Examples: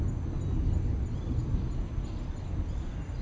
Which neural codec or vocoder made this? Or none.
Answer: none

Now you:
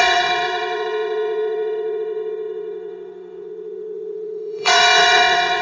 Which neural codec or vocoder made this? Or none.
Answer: vocoder, WaveNeXt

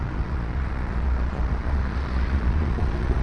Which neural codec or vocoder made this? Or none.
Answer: vocoder, Vocos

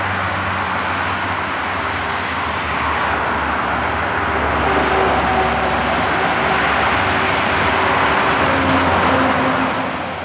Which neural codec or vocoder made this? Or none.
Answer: none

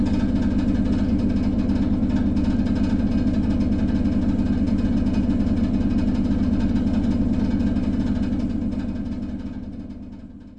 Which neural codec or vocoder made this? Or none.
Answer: none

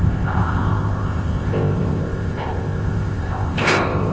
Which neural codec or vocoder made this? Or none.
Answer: codec, ZipCodec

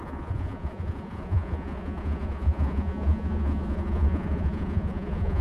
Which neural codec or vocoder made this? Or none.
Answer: vocoder, Vocos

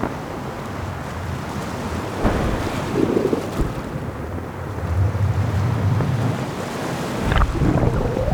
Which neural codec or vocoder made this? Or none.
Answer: none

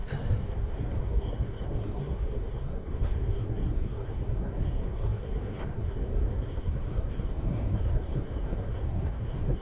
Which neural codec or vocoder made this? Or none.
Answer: codec, SNAC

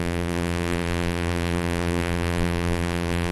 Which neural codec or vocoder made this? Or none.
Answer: vocoder, BigVGAN v2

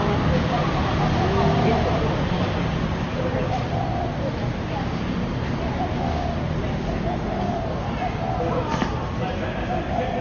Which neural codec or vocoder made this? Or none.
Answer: none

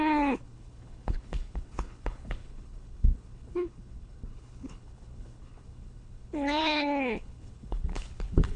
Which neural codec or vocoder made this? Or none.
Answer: codec, HILCodec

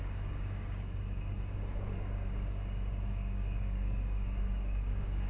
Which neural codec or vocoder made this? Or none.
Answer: codec, DAC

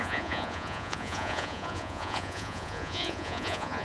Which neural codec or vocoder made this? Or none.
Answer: vocoder, Vocos